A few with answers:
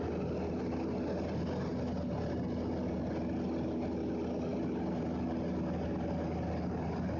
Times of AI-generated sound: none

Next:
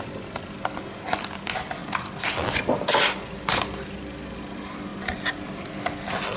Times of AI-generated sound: none

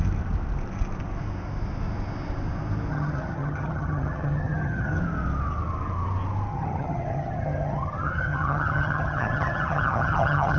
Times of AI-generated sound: 2.9-5.0 (vocoder, HiFi-GAN); 6.5-10.6

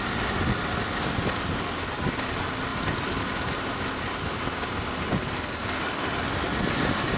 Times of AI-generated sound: none

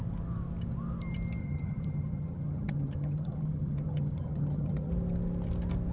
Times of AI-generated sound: 1.4-4.9 (vocoder, HiFi-GAN)

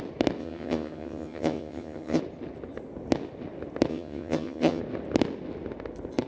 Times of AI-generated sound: 0.4-2.2 (vocoder, HiFi-GAN); 3.9-4.8

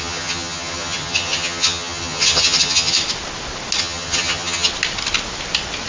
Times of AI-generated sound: 0.0-3.0 (vocoder, HiFi-GAN); 3.8-4.7